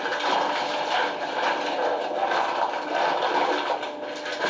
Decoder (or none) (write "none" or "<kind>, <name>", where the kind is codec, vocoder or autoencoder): none